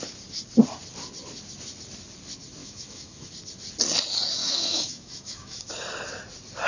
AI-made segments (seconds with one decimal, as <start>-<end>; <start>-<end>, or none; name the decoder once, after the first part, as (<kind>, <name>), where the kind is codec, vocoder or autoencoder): 2.6-3.3 (autoencoder, DAC-VAE); 4.4-5.7